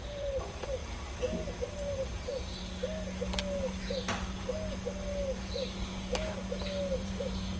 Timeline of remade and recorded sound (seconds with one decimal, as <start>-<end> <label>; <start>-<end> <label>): 0.0-0.8 remade; 0.8-1.7 recorded; 1.7-2.3 remade; 2.3-6.9 recorded; 6.9-7.6 remade